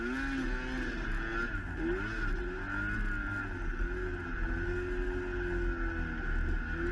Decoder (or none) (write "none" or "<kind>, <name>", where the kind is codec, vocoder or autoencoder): none